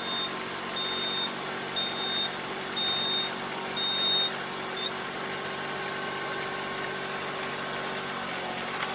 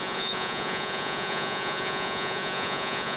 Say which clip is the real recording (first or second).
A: first